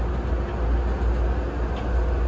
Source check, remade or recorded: recorded